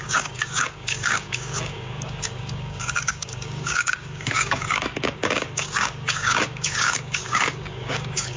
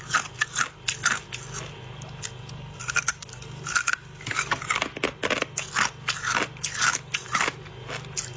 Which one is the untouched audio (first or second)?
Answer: second